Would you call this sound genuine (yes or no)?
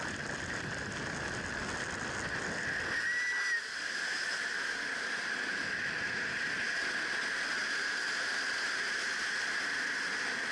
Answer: yes